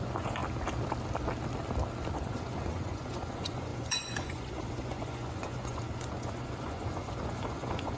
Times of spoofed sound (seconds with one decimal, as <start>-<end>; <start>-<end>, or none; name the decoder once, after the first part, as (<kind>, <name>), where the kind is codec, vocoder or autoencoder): 0.0-0.4 (vocoder, Vocos); 2.1-8.0